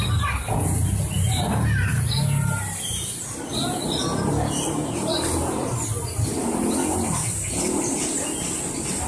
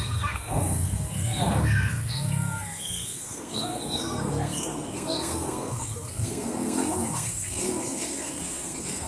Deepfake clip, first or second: second